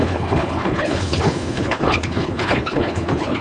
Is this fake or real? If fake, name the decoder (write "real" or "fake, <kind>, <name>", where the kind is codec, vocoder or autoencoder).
fake, codec, HILCodec